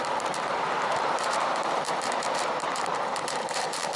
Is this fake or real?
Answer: fake